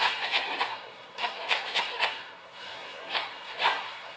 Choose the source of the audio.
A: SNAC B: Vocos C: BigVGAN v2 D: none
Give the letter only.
A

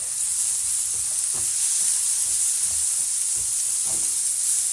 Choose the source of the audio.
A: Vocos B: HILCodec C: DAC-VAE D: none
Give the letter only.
D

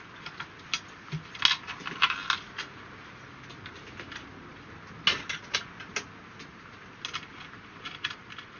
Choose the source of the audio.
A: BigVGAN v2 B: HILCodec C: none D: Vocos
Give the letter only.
C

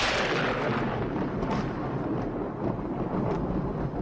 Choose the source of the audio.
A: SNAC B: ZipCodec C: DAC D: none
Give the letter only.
D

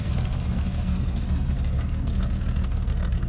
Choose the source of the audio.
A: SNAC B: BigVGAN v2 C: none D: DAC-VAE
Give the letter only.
A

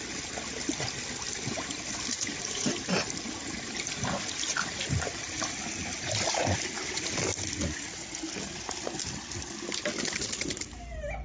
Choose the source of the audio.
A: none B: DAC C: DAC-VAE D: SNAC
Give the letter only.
A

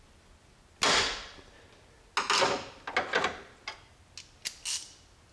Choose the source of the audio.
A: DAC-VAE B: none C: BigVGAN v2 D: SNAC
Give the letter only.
B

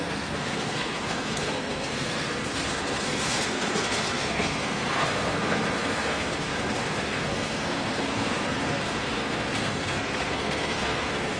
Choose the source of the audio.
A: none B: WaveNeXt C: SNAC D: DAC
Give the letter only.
C